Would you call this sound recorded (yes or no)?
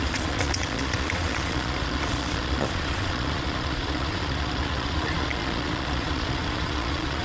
no